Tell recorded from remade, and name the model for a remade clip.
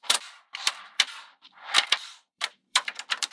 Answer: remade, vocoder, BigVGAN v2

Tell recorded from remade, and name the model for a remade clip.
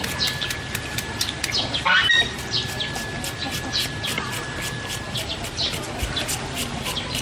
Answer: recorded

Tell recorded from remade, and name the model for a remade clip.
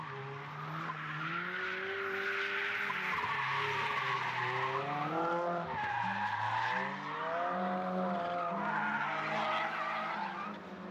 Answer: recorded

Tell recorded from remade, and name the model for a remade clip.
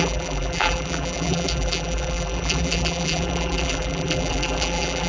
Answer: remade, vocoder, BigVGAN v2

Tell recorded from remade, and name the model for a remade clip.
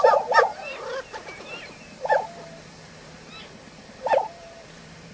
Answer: remade, vocoder, BigVGAN v2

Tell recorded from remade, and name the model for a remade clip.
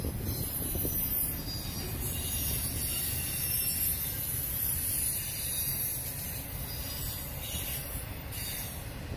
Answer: recorded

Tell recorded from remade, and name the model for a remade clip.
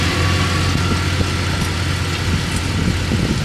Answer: recorded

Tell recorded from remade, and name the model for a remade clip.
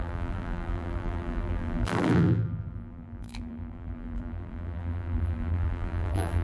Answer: remade, vocoder, BigVGAN v2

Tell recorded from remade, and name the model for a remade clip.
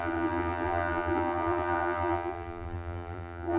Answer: remade, vocoder, BigVGAN v2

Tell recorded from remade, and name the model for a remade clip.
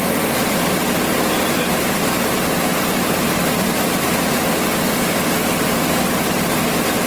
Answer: remade, vocoder, BigVGAN v2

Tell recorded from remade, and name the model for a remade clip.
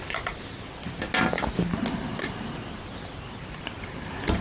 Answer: recorded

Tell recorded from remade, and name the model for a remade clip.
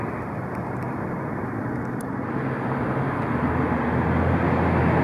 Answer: recorded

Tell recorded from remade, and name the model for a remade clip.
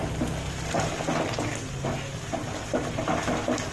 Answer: recorded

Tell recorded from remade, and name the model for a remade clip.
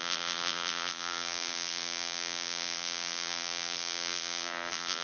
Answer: remade, vocoder, BigVGAN v2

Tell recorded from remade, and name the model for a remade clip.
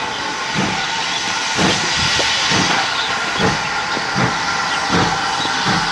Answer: recorded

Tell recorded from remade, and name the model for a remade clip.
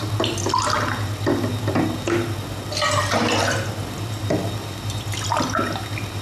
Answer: recorded